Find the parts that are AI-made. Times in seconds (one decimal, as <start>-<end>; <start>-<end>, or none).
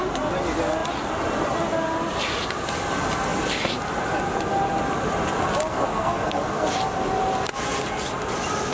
5.7-6.7